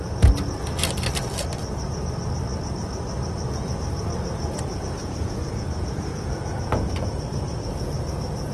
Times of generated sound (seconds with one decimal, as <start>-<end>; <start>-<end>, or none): 5.0-7.2